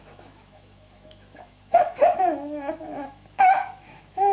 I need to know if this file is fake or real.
fake